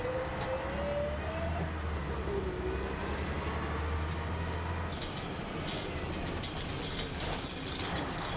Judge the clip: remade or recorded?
recorded